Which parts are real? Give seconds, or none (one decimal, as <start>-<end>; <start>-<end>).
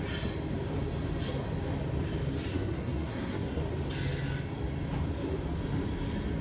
0.0-2.5; 3.6-6.4